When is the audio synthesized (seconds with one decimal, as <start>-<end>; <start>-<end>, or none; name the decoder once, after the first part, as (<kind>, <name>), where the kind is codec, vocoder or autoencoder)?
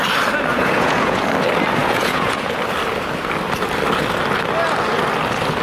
0.5-1.2 (vocoder, Vocos); 1.8-2.6